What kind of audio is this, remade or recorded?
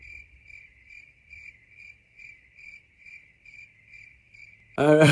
remade